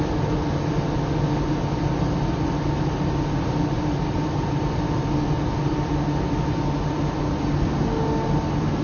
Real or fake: real